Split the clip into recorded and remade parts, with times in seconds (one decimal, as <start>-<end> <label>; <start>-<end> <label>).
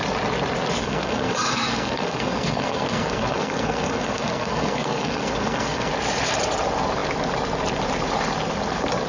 0.0-0.8 recorded; 0.8-5.9 remade; 5.9-9.1 recorded